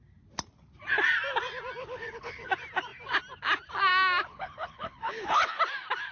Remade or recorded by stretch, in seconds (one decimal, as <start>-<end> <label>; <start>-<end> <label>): 0.0-1.8 recorded; 1.8-2.5 remade; 2.5-4.3 recorded; 4.3-5.6 remade; 5.6-6.1 recorded